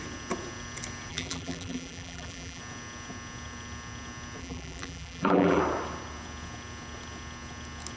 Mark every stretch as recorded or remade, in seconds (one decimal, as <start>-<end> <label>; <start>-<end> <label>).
0.0-1.1 recorded; 1.1-2.6 remade; 2.6-4.4 recorded; 4.4-5.6 remade; 5.6-8.0 recorded